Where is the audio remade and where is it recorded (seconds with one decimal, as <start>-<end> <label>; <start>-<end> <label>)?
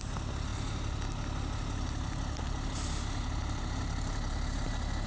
0.0-5.1 recorded